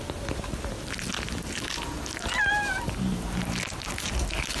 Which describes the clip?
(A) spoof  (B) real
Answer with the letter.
B